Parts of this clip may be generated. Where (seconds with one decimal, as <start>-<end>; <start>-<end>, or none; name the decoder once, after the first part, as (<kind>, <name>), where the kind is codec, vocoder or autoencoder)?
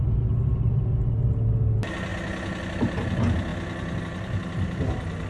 none